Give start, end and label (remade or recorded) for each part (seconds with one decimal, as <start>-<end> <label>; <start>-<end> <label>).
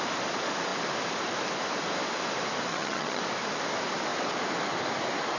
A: 0.0-2.7 recorded; 2.7-3.2 remade; 3.2-5.4 recorded